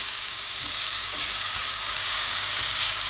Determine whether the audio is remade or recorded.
remade